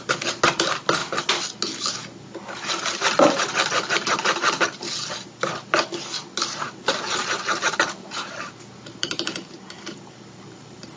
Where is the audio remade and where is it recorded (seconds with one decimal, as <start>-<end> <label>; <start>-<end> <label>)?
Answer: 0.0-6.8 recorded; 6.8-11.0 remade